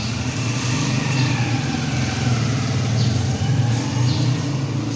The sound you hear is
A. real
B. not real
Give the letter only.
A